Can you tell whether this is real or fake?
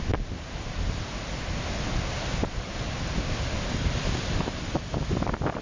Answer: real